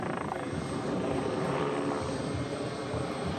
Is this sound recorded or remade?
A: recorded